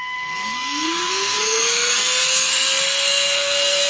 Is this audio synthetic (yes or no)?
yes